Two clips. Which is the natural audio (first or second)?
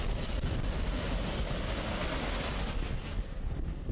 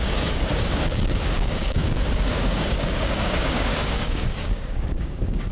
first